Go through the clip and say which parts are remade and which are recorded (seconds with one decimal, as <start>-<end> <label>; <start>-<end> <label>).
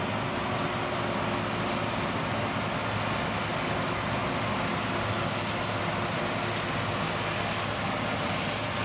0.0-8.8 recorded